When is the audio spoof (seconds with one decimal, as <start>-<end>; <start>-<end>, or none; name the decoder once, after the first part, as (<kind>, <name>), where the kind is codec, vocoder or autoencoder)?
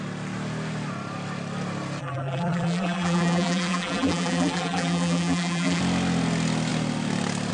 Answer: 2.0-5.8 (vocoder, BigVGAN v2)